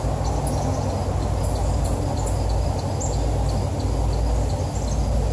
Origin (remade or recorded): recorded